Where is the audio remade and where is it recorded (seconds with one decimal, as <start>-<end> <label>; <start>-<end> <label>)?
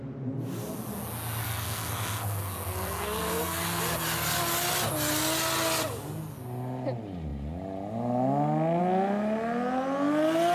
0.0-1.4 recorded; 1.4-3.8 remade; 3.8-10.5 recorded